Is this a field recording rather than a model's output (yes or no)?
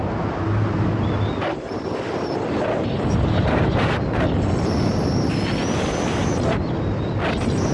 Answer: yes